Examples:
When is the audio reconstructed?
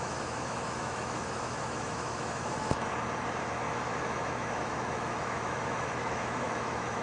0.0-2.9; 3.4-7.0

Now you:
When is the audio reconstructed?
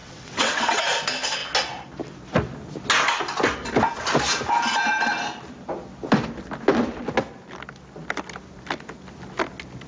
0.0-0.8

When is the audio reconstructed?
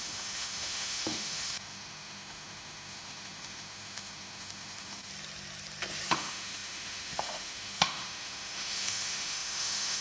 0.0-5.1; 6.1-10.0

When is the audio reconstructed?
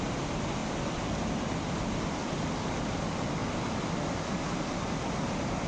none